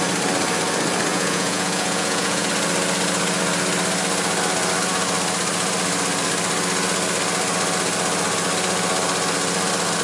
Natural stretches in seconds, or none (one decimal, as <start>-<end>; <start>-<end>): 0.0-1.1; 2.5-10.0